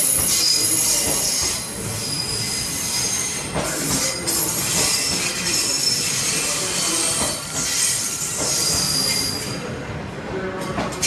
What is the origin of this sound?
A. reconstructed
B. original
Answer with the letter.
B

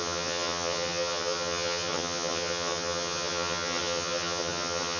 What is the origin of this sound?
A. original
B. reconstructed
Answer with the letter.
B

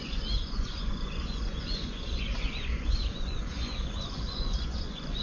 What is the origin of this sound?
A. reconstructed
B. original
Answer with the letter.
A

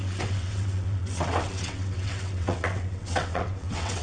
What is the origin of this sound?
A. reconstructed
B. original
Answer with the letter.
A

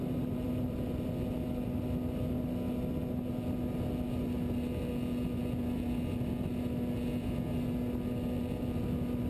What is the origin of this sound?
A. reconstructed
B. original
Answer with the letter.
B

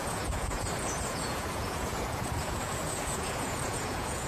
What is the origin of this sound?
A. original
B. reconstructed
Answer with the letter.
B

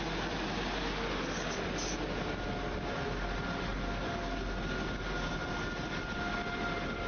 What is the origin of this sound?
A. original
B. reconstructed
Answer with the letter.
A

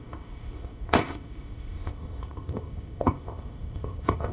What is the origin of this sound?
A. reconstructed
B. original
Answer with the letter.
A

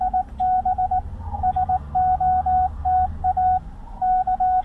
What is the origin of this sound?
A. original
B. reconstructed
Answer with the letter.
A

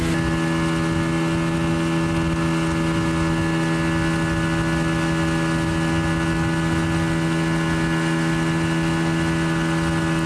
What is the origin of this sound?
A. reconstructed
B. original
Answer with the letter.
B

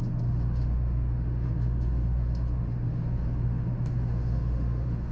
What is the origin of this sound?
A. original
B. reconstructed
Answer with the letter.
B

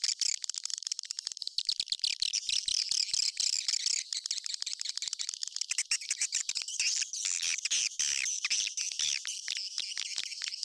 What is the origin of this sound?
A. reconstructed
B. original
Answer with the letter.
B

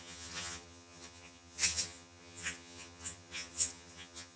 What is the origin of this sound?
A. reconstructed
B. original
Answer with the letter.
A